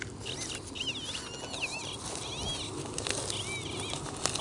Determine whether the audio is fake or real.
real